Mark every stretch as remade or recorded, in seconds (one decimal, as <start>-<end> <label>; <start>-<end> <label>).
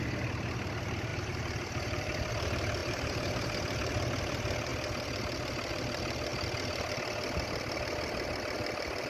0.0-1.1 recorded; 1.1-2.3 remade; 2.3-2.8 recorded; 2.8-3.5 remade; 3.5-9.1 recorded